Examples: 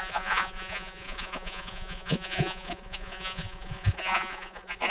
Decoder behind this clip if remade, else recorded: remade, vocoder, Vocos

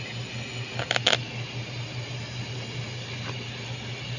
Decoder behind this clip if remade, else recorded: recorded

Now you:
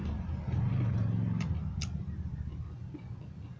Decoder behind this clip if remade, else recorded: recorded